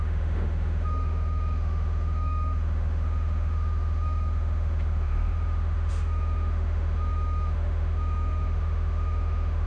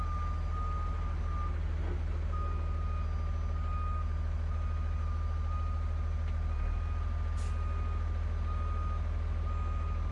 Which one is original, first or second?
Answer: second